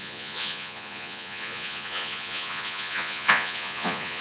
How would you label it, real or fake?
fake